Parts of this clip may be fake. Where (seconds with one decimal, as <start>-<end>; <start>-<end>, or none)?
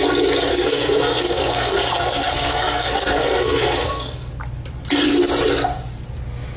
0.5-4.3